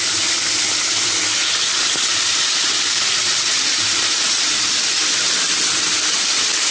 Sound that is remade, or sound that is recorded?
recorded